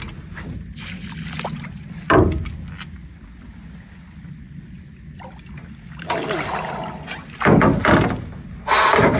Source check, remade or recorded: recorded